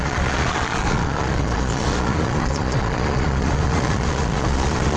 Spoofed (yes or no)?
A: yes